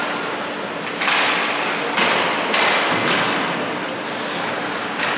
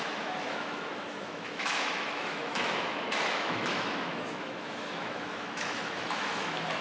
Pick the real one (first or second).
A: first